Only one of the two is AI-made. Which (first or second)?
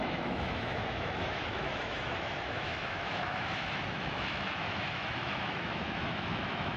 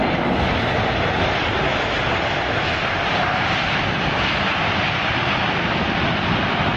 first